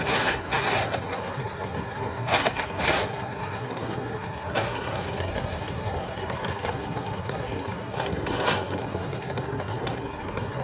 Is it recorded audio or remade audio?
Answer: remade